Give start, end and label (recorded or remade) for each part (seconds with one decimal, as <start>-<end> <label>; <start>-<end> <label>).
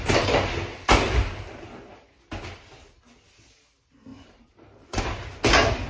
0.0-4.1 recorded; 4.1-5.0 remade; 5.0-5.9 recorded